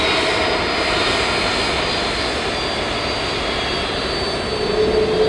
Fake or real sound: real